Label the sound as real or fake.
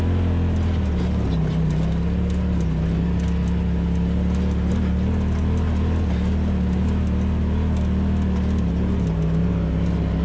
real